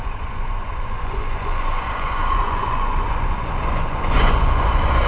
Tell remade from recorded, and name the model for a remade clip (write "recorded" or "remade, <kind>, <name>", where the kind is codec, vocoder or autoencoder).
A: remade, vocoder, Vocos